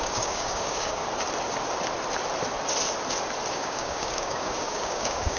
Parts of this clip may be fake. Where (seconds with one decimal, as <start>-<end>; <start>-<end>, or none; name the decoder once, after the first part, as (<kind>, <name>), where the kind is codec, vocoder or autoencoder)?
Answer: 0.0-1.0 (codec, DAC); 3.5-5.4